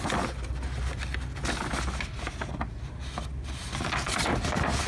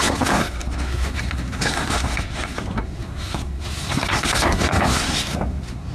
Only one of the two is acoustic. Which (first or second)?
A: first